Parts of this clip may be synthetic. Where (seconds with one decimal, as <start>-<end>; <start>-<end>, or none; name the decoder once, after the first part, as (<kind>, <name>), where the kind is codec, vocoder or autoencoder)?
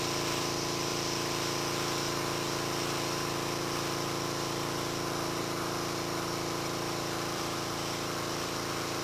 0.0-0.9 (vocoder, BigVGAN v2); 5.4-9.0